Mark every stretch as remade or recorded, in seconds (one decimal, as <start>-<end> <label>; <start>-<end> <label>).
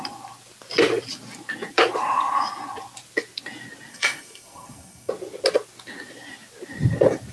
0.0-3.9 recorded; 3.9-5.1 remade; 5.1-7.3 recorded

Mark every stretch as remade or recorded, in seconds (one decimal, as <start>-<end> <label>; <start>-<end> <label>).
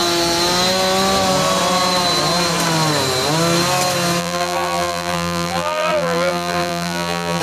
0.0-4.2 recorded; 4.2-7.4 remade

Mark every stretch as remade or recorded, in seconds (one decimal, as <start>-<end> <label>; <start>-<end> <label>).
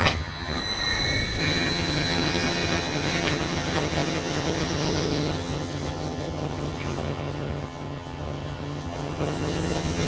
0.0-0.6 remade; 0.6-1.4 recorded; 1.4-10.1 remade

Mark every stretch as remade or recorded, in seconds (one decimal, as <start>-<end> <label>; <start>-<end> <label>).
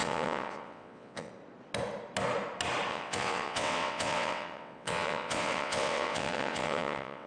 0.0-1.3 remade; 1.3-2.9 recorded; 2.9-7.3 remade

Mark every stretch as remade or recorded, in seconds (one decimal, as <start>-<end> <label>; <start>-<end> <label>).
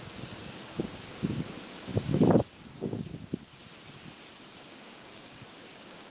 0.0-3.5 remade; 3.5-4.5 recorded; 4.5-6.1 remade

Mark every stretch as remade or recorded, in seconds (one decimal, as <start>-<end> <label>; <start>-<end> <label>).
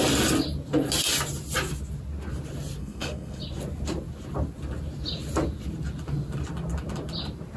0.0-2.8 recorded; 2.8-3.4 remade; 3.4-7.6 recorded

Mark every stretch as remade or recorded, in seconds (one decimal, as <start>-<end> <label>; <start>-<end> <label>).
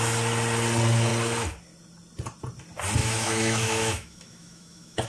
0.0-3.0 recorded; 3.0-5.1 remade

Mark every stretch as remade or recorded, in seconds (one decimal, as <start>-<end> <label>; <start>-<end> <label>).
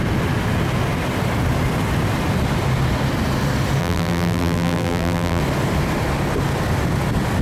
0.0-3.8 recorded; 3.8-5.4 remade; 5.4-7.4 recorded